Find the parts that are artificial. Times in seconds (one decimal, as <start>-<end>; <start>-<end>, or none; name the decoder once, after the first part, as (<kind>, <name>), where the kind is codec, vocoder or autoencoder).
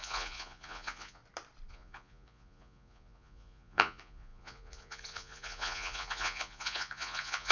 0.0-1.2 (vocoder, Vocos); 1.7-7.5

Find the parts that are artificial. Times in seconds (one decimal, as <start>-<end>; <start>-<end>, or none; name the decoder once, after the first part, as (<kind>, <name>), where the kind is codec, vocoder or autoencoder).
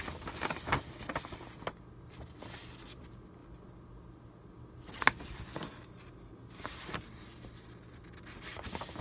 none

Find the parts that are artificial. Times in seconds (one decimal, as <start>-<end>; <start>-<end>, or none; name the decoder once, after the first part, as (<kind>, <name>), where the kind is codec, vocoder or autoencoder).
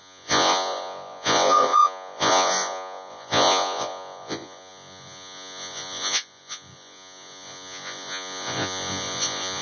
0.0-9.6 (vocoder, Vocos)